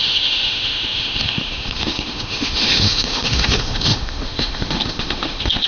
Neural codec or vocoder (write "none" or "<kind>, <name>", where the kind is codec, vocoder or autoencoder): autoencoder, DAC-VAE